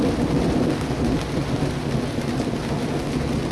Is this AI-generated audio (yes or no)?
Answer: no